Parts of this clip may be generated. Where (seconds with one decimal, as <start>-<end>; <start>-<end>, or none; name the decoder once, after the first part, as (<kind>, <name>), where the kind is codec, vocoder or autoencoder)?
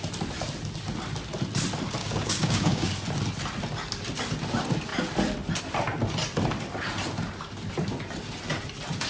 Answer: 2.0-2.9 (codec, DAC)